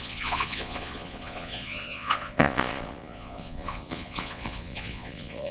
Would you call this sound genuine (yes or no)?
no